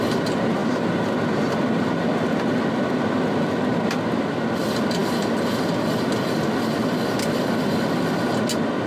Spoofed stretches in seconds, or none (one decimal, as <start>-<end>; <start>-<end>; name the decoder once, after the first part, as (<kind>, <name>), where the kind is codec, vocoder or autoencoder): none